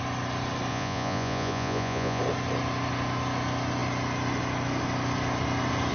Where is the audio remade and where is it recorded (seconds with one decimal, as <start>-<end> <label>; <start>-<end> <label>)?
0.0-0.7 recorded; 0.7-2.2 remade; 2.2-5.9 recorded